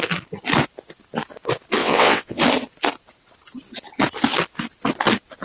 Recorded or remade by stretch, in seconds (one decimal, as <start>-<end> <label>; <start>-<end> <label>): 0.0-1.8 recorded; 1.8-2.4 remade; 2.4-5.4 recorded